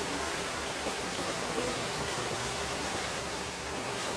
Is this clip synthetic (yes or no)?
yes